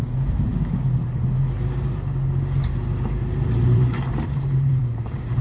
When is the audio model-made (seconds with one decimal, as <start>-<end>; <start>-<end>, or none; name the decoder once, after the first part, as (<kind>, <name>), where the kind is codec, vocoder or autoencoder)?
0.0-0.5 (vocoder, BigVGAN v2); 3.7-4.8